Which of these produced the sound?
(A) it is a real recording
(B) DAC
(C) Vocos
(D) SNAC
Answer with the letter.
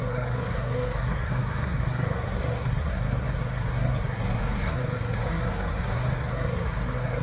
D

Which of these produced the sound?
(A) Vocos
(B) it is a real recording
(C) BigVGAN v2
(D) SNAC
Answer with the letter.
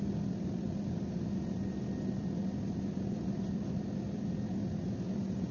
B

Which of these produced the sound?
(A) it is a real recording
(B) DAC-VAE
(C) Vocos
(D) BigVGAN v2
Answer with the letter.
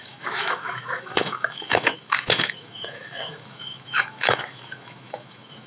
B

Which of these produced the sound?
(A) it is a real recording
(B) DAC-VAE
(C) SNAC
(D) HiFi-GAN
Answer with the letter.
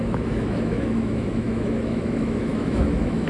B